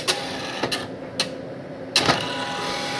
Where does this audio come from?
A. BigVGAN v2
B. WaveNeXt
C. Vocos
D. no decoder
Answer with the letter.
D